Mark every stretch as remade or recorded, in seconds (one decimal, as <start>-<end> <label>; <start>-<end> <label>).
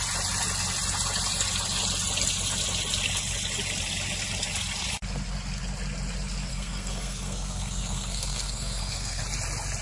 0.0-6.5 recorded; 6.5-9.2 remade; 9.2-9.8 recorded